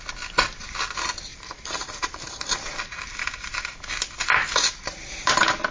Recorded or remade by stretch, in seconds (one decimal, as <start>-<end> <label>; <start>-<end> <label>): 0.0-1.3 recorded; 1.3-3.9 remade; 3.9-5.7 recorded